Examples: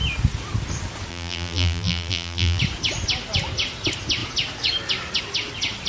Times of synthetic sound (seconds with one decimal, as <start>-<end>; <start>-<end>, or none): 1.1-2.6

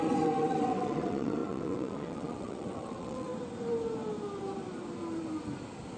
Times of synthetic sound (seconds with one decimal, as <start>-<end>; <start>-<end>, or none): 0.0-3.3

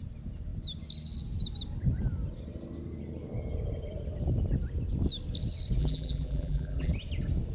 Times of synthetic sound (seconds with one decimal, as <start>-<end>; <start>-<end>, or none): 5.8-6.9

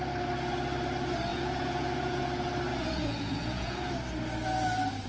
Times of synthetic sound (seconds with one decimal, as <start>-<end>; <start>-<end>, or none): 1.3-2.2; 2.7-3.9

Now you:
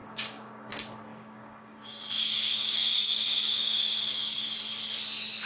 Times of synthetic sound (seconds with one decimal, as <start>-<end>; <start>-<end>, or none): 0.0-0.7; 1.1-4.4

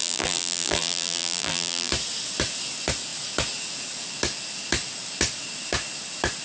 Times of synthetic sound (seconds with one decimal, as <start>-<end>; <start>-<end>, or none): 0.0-1.9